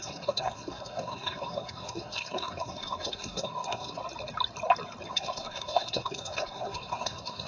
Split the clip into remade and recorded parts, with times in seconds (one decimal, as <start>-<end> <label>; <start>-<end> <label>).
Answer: 0.0-4.0 remade; 4.0-5.1 recorded; 5.1-7.5 remade